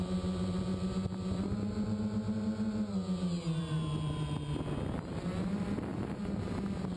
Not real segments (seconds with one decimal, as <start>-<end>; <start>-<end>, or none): none